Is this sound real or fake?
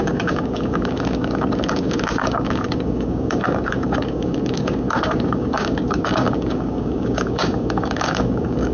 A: fake